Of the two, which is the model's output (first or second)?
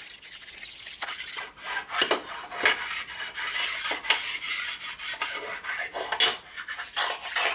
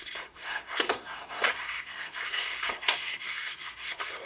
second